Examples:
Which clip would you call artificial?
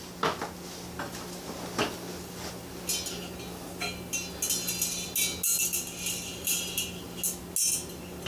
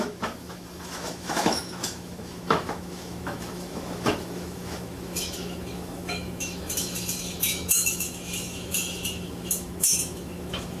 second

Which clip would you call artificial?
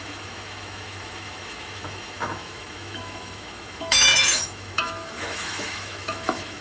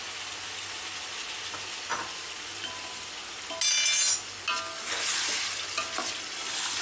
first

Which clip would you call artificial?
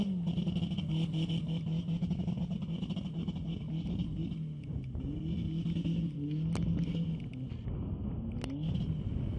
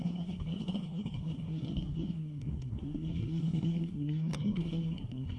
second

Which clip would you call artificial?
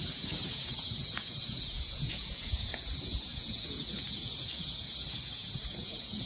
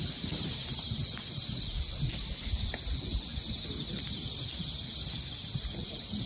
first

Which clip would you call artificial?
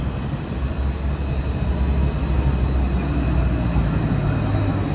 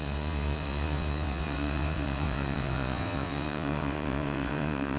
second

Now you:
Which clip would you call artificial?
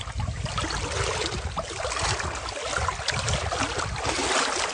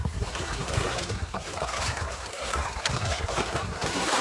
second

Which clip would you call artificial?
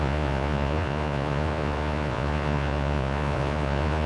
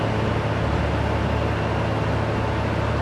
first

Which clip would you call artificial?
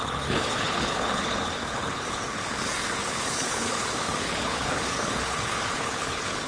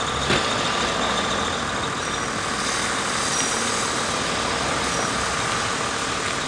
first